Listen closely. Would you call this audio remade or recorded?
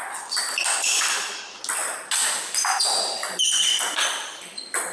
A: recorded